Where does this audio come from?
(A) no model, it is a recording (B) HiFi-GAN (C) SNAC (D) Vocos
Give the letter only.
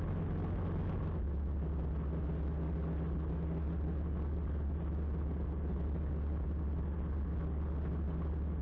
A